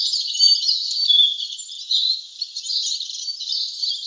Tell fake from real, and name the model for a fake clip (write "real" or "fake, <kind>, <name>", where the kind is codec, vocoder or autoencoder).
fake, vocoder, BigVGAN v2